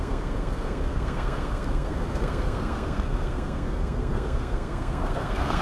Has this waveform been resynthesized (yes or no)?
yes